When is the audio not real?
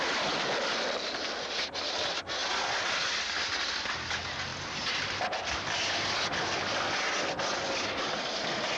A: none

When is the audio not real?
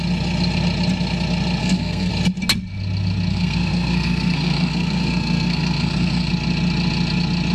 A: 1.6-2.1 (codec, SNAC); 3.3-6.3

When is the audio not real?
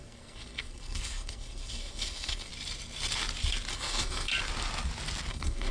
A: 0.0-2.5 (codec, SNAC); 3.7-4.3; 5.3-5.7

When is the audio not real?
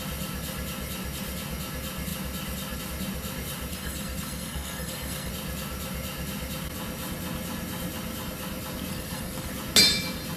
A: 3.7-5.3 (codec, SNAC); 8.9-9.5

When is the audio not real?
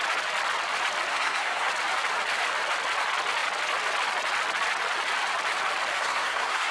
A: 1.1-1.7 (codec, SNAC); 5.9-6.7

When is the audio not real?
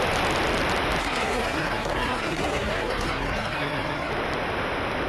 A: 1.0-4.1 (codec, SNAC)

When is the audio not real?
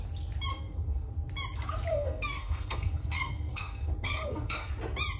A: 0.5-1.1 (codec, SNAC); 1.9-4.7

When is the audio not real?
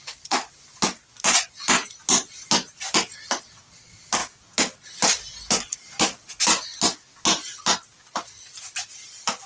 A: none